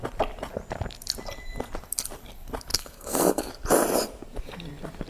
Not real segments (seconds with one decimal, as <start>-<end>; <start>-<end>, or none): 2.7-3.5